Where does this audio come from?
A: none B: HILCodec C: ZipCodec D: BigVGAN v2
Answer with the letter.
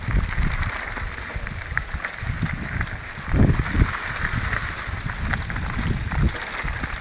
D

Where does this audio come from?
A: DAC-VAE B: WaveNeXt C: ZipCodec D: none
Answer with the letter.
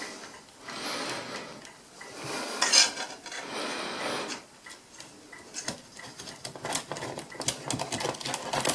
D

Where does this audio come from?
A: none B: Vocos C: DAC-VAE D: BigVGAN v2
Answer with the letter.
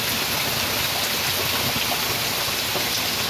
A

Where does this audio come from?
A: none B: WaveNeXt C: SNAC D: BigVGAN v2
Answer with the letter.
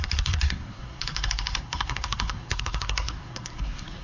C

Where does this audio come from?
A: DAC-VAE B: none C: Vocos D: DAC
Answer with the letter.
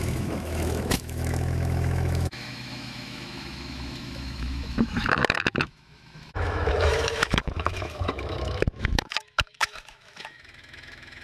A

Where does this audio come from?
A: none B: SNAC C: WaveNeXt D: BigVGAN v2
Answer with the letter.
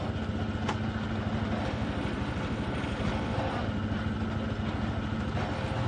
A